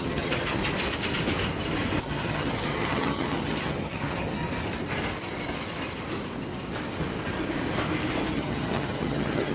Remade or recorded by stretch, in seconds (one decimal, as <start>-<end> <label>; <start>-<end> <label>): 0.0-0.6 remade; 0.6-2.0 recorded; 2.0-4.4 remade; 4.4-8.3 recorded; 8.3-9.5 remade